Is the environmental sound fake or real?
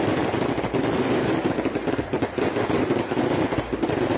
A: real